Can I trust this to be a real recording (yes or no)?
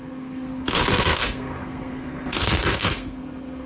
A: no